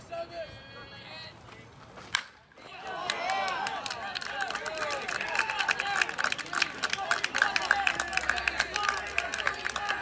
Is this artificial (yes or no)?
no